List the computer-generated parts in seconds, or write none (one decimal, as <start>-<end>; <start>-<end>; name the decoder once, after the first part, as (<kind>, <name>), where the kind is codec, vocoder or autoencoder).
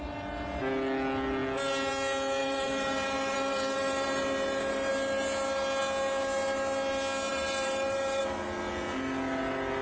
2.4-4.2 (vocoder, BigVGAN v2); 7.3-8.2